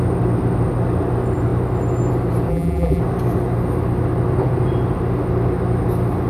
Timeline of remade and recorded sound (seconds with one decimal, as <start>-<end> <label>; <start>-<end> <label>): 0.0-2.5 recorded; 2.5-3.0 remade; 3.0-6.3 recorded